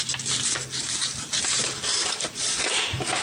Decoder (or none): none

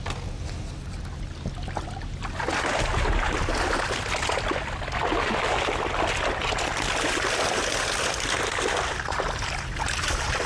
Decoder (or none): none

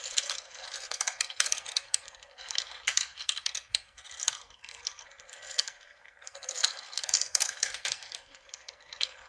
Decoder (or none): codec, SNAC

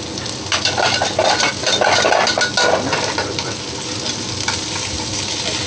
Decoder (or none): none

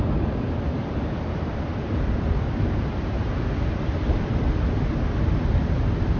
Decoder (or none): none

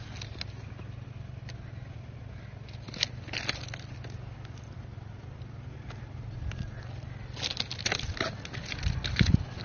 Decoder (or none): none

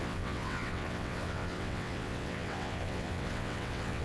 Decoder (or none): vocoder, WaveNeXt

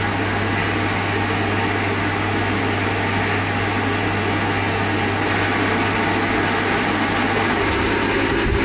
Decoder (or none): none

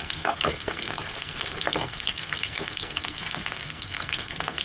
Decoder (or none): codec, SNAC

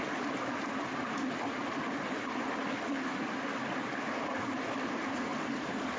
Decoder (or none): none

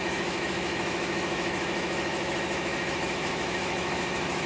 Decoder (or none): autoencoder, DAC-VAE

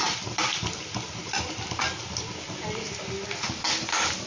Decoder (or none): none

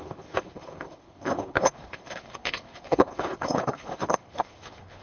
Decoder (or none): codec, HILCodec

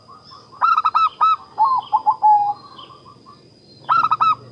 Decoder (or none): none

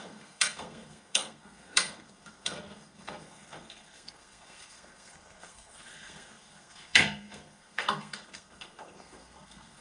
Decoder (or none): codec, SNAC